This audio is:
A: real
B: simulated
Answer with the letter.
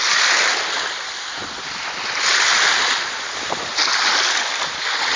A